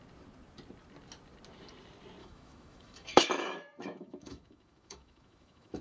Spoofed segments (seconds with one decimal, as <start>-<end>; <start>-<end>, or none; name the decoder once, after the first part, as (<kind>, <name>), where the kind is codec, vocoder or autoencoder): 2.2-5.8 (autoencoder, DAC-VAE)